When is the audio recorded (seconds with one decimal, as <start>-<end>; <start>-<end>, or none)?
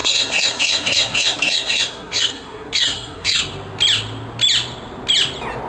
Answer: 3.4-5.7